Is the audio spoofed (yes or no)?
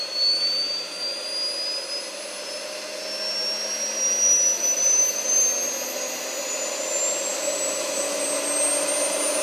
no